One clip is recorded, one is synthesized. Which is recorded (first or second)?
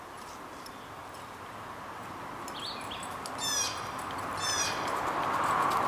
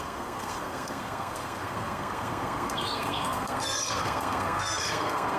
first